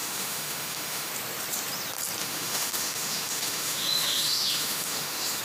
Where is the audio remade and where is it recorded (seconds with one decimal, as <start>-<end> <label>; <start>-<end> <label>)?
0.0-1.1 remade; 1.1-2.2 recorded; 2.2-5.4 remade